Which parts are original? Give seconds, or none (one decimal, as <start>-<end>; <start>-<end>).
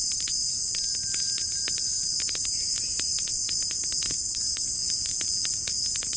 0.0-4.8; 5.7-6.2